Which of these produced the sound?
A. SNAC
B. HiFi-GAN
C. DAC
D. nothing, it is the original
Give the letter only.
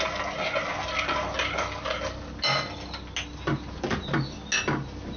D